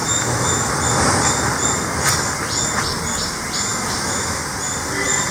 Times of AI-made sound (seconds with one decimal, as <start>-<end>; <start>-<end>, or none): 0.0-0.7; 3.7-4.4